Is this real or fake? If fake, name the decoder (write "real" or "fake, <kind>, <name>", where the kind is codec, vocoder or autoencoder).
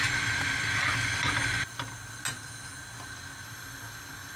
real